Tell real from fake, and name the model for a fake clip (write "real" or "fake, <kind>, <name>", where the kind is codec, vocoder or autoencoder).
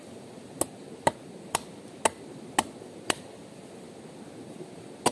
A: real